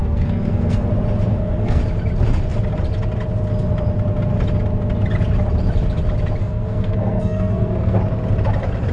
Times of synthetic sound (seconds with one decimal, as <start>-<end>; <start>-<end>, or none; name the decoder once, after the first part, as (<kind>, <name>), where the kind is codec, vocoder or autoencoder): 0.0-0.9 (codec, SNAC); 1.3-1.8; 6.4-8.0